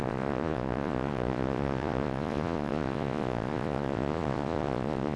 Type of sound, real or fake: fake